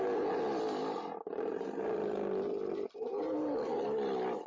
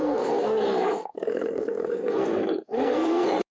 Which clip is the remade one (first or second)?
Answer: second